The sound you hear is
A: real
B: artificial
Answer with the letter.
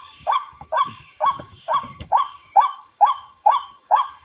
B